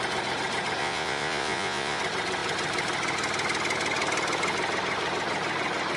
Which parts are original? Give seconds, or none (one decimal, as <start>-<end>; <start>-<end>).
0.0-0.8; 2.0-6.0